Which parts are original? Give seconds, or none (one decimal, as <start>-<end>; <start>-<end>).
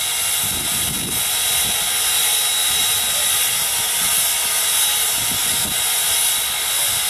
0.0-7.1